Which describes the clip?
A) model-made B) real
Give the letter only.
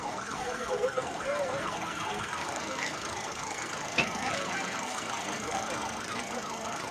A